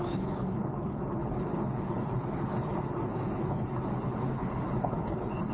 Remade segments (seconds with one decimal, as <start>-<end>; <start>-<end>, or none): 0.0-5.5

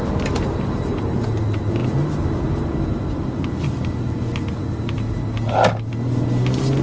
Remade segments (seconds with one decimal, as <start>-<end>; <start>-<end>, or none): none

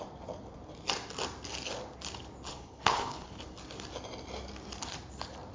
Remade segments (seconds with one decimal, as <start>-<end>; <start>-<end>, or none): 2.5-3.4

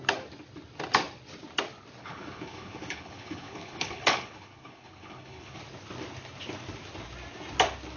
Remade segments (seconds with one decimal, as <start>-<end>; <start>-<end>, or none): 2.0-5.6

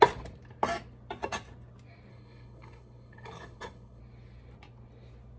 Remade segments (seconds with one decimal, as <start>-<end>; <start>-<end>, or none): 2.1-4.0